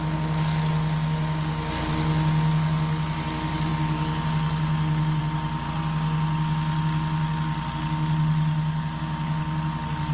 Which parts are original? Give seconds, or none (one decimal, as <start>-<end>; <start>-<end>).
0.0-10.1